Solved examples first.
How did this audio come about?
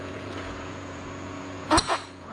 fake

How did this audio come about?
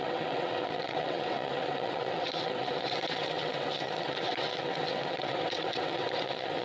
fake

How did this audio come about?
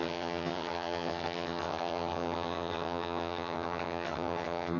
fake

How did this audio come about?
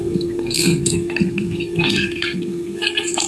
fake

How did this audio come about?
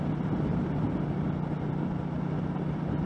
real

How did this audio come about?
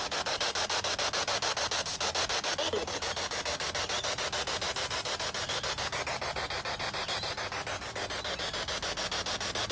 real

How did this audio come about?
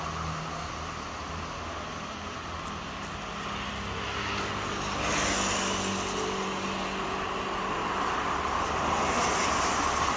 real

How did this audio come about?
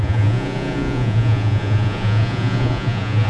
fake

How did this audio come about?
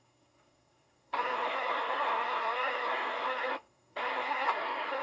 fake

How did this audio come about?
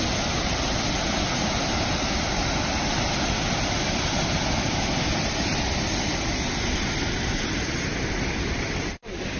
real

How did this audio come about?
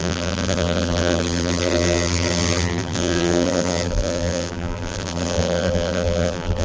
fake